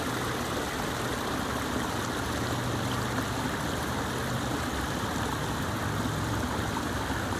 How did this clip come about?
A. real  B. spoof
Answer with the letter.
A